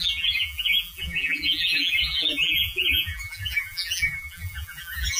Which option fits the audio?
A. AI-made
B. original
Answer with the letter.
A